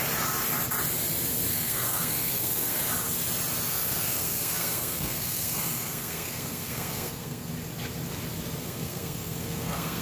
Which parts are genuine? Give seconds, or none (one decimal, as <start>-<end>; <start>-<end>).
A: 0.0-1.5; 2.8-3.7; 7.5-8.6